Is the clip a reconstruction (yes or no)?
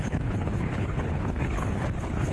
yes